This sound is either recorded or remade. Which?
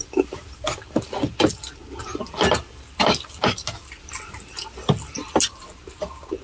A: recorded